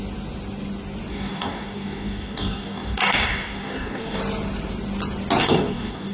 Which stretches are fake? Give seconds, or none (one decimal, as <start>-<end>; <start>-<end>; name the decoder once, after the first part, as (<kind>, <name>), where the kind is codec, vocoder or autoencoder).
1.1-4.2 (codec, DAC); 5.4-6.1